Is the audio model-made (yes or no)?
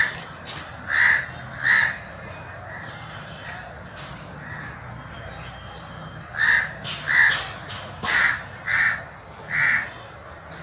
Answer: no